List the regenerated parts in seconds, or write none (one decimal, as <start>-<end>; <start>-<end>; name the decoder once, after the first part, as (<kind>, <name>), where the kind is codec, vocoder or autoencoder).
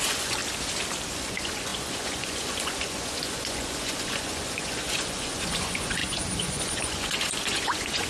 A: 0.0-0.4 (vocoder, Vocos); 1.1-8.1